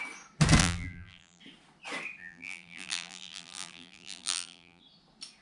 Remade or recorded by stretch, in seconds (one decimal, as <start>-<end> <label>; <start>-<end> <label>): 0.0-0.6 recorded; 0.6-1.4 remade; 1.4-2.2 recorded; 2.2-4.8 remade; 4.8-5.4 recorded